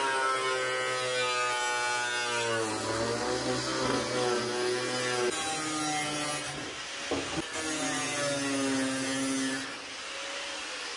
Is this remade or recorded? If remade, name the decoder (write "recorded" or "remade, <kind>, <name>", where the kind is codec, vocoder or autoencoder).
recorded